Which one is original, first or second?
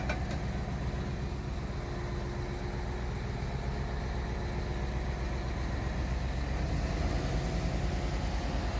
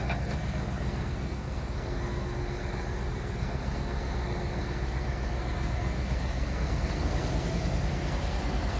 first